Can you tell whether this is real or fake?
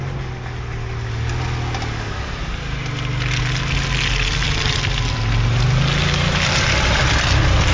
real